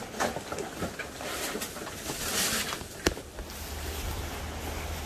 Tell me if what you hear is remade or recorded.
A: recorded